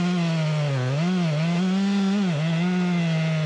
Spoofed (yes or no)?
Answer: no